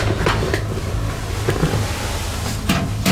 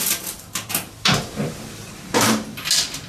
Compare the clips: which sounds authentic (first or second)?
first